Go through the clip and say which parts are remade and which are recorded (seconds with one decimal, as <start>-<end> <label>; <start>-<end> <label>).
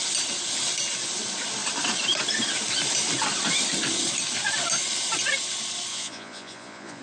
0.0-5.9 recorded; 5.9-7.0 remade